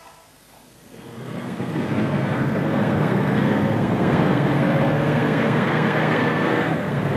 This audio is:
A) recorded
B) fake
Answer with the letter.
B